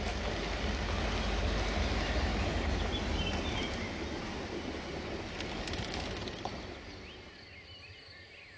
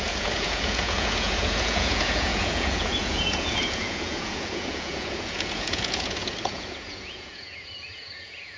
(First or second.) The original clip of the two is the first